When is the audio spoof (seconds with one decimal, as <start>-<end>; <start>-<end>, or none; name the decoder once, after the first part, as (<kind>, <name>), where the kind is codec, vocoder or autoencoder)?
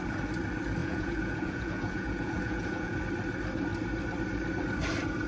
0.8-3.0 (vocoder, Vocos)